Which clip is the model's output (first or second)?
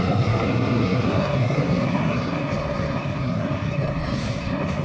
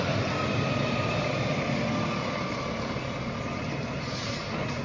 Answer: first